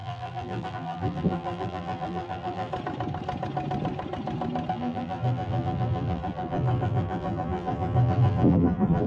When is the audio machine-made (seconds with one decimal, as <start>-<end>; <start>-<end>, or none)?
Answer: 0.0-2.7; 4.7-9.1